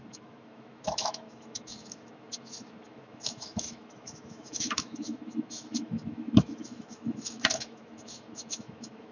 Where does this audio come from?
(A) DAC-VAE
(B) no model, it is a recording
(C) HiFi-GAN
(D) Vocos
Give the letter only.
A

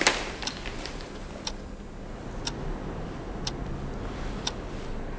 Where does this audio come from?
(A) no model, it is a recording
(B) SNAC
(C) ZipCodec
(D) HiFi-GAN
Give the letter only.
A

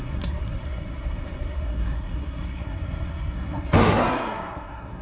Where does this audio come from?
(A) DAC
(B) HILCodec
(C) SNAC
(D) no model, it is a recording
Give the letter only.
C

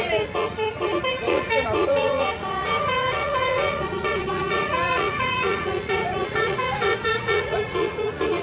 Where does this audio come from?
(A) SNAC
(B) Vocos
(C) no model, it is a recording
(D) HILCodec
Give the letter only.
B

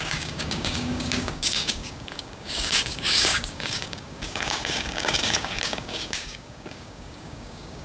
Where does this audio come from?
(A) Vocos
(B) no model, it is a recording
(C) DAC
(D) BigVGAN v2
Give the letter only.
C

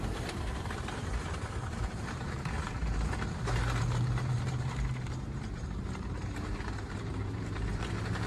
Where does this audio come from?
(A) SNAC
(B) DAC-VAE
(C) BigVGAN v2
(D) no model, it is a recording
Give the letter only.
C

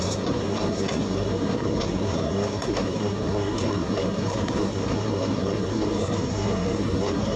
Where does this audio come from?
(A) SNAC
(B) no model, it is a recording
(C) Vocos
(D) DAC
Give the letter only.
A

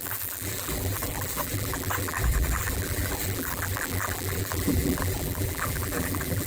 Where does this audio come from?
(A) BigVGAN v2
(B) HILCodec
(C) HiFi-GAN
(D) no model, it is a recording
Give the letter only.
A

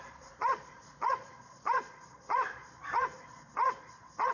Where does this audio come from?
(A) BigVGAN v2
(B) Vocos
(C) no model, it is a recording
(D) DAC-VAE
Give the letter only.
B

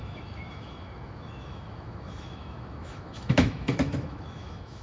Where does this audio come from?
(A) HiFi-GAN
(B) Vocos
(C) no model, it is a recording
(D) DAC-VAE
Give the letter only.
D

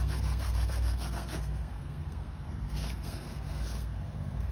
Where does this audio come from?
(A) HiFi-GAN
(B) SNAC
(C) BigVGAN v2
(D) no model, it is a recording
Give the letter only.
B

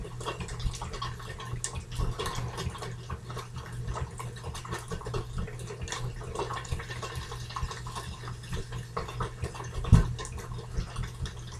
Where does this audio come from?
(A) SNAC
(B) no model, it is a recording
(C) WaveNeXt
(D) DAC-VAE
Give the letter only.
B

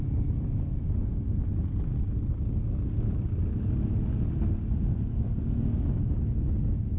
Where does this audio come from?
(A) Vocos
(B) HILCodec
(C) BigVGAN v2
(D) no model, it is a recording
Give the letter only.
D